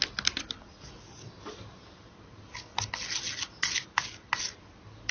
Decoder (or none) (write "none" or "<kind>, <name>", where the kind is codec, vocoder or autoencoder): none